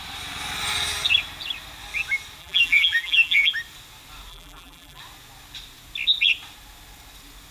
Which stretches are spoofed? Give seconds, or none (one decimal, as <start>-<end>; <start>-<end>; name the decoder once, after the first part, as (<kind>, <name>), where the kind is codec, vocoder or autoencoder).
2.4-3.5 (vocoder, BigVGAN v2); 4.3-5.0